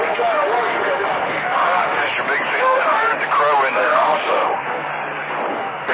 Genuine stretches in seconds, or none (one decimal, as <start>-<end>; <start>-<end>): 2.0-2.6; 3.1-3.7; 4.9-5.5